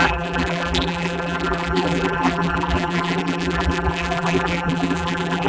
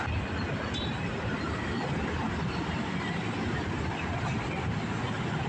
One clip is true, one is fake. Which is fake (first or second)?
first